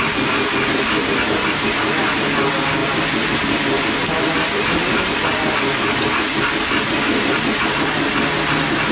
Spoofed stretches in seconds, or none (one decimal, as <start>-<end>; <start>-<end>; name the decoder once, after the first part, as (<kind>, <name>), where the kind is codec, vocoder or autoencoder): none